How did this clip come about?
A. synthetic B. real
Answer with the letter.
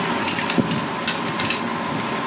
B